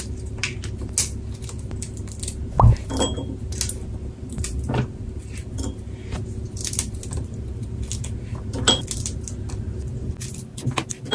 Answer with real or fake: real